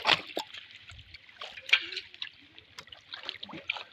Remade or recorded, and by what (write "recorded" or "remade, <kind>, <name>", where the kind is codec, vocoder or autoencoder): recorded